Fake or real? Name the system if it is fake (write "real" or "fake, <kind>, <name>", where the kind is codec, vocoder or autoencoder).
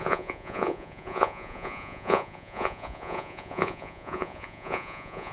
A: fake, vocoder, Vocos